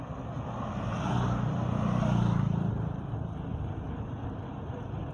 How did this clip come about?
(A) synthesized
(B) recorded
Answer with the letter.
B